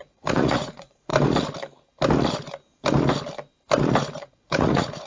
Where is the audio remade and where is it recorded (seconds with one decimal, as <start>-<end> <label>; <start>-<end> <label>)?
0.0-1.1 remade; 1.1-4.2 recorded; 4.2-5.1 remade

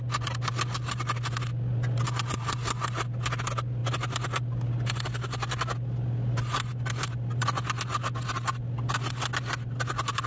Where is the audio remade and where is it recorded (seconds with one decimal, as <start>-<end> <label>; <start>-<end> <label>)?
0.0-10.3 recorded